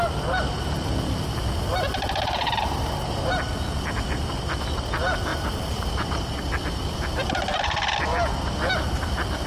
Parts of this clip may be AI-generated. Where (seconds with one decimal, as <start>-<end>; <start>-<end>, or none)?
5.3-7.3